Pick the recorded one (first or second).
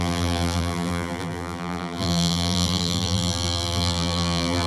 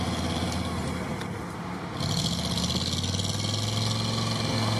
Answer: second